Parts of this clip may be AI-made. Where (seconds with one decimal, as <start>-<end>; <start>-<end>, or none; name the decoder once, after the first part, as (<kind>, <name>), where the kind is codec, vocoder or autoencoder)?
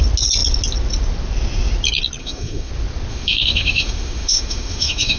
2.2-2.7 (autoencoder, DAC-VAE); 3.1-5.2